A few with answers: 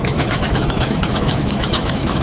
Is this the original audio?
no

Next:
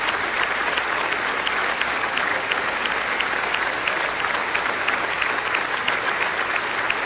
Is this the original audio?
yes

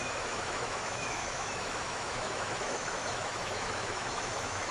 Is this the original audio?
no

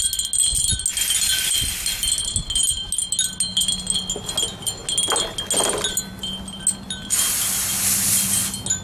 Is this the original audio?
yes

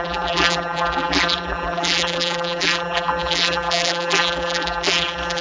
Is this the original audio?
no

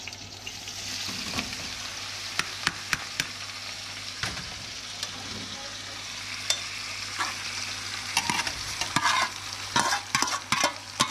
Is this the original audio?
yes